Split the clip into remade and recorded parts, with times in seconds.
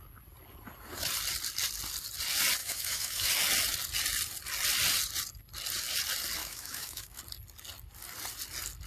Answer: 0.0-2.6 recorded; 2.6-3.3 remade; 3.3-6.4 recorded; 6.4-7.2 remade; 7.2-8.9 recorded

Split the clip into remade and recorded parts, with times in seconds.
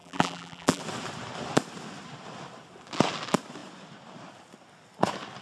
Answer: 0.0-0.8 remade; 0.8-5.4 recorded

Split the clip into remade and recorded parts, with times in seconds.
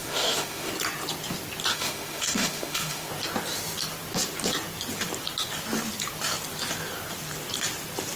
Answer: 0.0-0.7 remade; 0.7-1.7 recorded; 1.7-3.1 remade; 3.1-8.2 recorded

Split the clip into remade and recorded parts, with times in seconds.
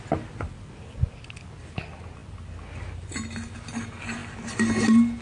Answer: 0.0-5.2 recorded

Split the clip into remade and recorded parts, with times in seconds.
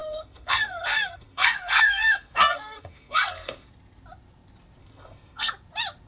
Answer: 0.0-3.7 remade; 3.7-4.8 recorded; 4.8-5.5 remade; 5.5-6.1 recorded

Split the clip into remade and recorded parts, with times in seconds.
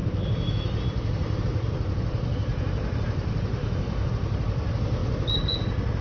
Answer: 0.0-0.8 remade; 0.8-3.6 recorded; 3.6-4.1 remade; 4.1-6.0 recorded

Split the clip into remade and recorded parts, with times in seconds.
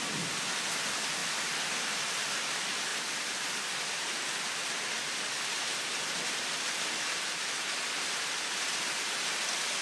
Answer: 0.0-1.2 recorded; 1.2-2.4 remade; 2.4-2.9 recorded; 2.9-5.2 remade; 5.2-9.8 recorded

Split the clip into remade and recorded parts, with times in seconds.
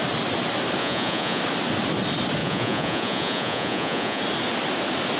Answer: 0.0-0.8 recorded; 0.8-1.4 remade; 1.4-2.4 recorded; 2.4-4.2 remade; 4.2-5.2 recorded